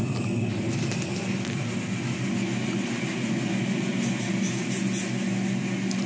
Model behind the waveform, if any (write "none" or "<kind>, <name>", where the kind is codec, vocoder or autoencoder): none